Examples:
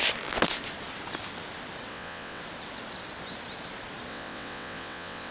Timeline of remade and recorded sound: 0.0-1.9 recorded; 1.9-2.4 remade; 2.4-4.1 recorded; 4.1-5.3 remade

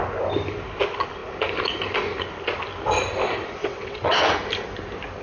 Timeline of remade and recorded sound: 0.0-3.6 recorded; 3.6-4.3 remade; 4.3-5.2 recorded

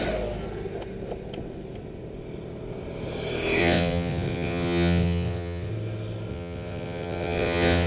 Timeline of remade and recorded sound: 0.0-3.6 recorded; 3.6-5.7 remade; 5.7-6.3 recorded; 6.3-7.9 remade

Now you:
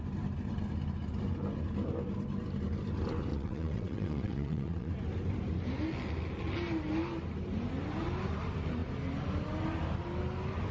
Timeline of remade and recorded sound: 0.0-3.3 recorded; 3.3-4.9 remade; 4.9-10.7 recorded

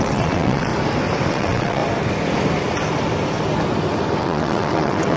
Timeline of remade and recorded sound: 0.0-0.7 remade; 0.7-1.3 recorded; 1.3-1.8 remade; 1.8-4.2 recorded; 4.2-5.2 remade

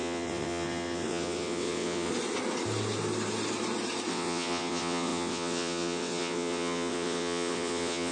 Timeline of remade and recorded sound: 0.0-2.1 remade; 2.1-4.1 recorded; 4.1-8.1 remade

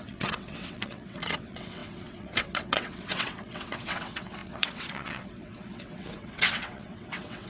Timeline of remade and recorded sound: 0.0-7.5 remade

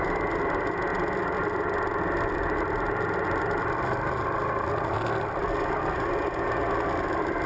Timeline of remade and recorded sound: 0.0-7.5 recorded